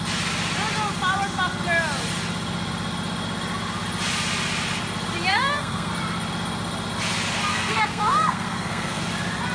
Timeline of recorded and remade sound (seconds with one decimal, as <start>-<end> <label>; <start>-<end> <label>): 0.0-5.3 recorded; 5.3-5.9 remade; 5.9-7.5 recorded; 7.5-9.0 remade; 9.0-9.5 recorded

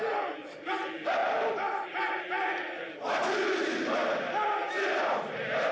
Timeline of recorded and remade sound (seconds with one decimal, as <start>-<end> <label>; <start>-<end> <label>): 0.0-5.7 recorded

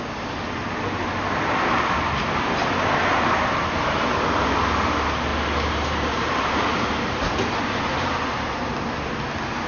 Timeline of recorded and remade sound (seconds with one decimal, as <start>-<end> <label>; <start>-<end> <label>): 0.0-5.3 recorded; 5.3-6.7 remade; 6.7-9.7 recorded

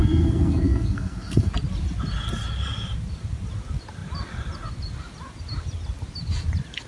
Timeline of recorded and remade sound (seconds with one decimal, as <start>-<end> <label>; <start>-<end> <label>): 0.0-1.5 remade; 1.5-6.9 recorded

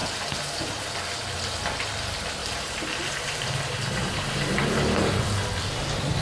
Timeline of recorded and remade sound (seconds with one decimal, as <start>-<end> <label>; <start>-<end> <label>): 0.0-0.9 remade; 0.9-2.4 recorded; 2.4-5.0 remade; 5.0-6.2 recorded